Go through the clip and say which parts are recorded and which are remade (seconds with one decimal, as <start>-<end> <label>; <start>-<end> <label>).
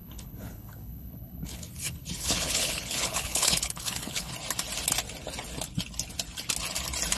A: 0.0-4.3 remade; 4.3-7.2 recorded